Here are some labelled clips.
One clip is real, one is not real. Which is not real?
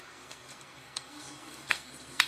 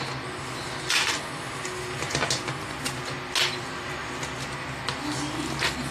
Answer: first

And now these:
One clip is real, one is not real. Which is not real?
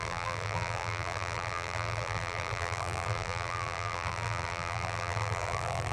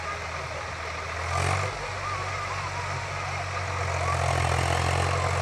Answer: first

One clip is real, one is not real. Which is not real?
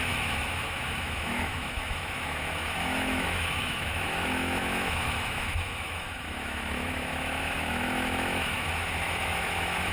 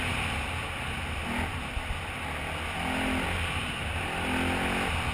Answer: first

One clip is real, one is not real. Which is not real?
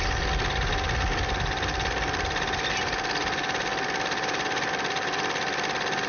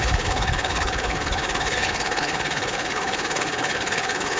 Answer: second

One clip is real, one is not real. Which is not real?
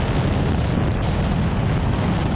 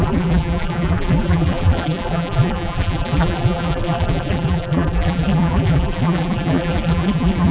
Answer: second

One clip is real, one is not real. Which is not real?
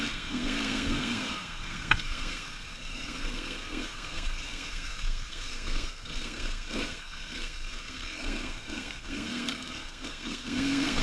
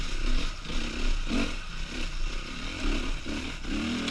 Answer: first